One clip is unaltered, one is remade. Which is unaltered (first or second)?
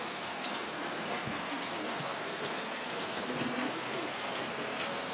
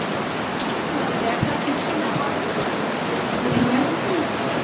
second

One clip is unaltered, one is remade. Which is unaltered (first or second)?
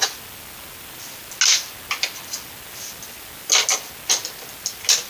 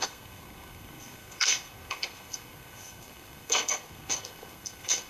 first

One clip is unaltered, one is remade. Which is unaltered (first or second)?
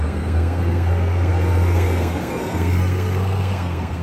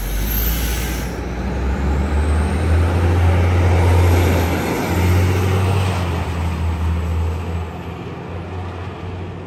second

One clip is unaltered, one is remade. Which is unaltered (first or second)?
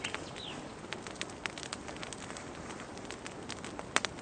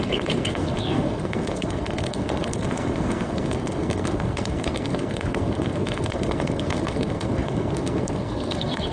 first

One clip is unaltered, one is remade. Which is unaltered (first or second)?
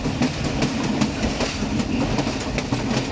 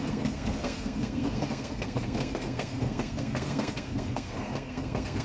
first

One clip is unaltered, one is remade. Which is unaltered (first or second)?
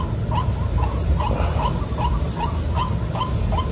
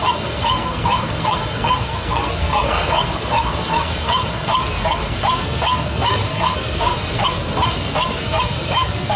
first